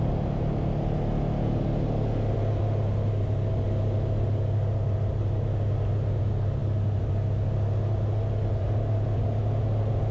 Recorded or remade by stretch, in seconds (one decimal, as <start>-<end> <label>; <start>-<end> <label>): 0.0-10.1 recorded